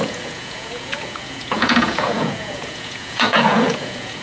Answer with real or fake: fake